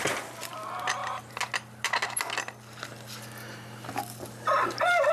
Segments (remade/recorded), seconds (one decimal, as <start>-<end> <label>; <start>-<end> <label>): 0.0-5.1 recorded